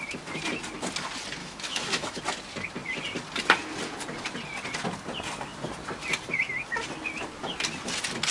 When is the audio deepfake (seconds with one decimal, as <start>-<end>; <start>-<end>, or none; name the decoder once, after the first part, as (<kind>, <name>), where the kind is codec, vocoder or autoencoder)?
1.4-2.2 (autoencoder, DAC-VAE)

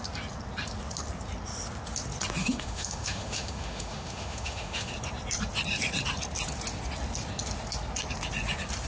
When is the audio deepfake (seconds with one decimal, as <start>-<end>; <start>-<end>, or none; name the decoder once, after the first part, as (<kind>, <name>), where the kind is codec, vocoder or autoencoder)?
2.4-4.9 (autoencoder, DAC-VAE)

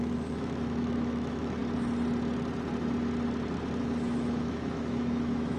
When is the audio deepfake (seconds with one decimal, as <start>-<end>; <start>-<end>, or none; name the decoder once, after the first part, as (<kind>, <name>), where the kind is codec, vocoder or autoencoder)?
0.0-1.6 (autoencoder, DAC-VAE); 3.8-5.6